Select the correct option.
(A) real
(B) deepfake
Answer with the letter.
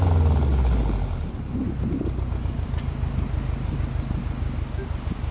A